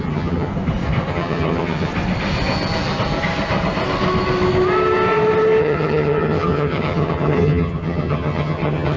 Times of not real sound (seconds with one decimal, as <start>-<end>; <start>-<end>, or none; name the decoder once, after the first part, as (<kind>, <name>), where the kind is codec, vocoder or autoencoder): 0.0-0.5 (vocoder, HiFi-GAN); 1.1-1.9; 5.6-9.0